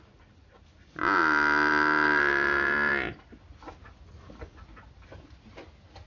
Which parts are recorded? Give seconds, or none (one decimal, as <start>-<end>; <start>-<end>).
0.0-6.1